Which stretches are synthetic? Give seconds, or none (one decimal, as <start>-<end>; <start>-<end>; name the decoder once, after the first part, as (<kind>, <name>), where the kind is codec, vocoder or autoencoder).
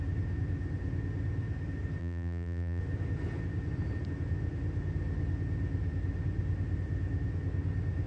2.0-2.8 (vocoder, BigVGAN v2)